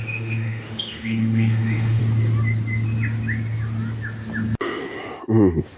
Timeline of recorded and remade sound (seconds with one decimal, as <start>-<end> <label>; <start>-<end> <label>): 0.0-2.0 remade; 2.0-5.8 recorded